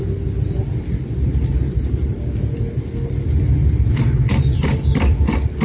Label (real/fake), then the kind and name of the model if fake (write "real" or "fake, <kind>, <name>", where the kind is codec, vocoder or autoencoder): real